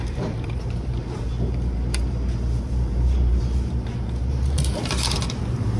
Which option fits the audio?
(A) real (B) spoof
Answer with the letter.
B